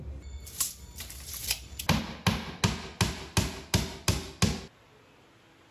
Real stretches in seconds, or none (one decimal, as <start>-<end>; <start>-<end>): 0.0-1.4; 2.0-5.7